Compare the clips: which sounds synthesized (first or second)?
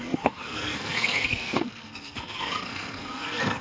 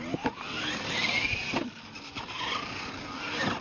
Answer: first